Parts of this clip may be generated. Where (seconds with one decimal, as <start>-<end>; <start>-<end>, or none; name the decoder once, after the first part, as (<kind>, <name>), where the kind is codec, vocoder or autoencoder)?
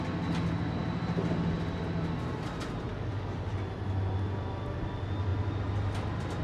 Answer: 2.9-3.5 (codec, DAC)